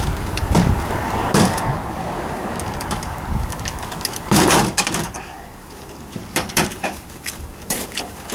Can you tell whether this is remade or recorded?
remade